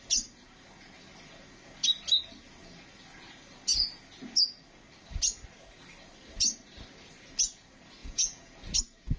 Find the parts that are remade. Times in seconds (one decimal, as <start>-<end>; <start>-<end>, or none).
8.0-8.5